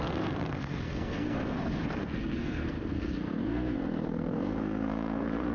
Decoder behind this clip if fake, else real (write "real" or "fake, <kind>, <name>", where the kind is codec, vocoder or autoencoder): fake, codec, SNAC